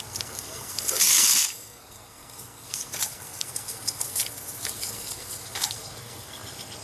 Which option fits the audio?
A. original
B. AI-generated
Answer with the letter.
B